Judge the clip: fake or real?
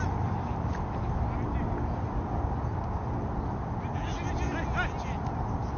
real